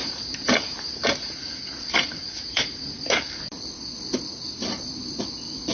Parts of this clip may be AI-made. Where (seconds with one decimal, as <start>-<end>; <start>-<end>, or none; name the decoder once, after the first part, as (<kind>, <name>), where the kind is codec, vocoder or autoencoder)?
0.0-3.4 (vocoder, BigVGAN v2)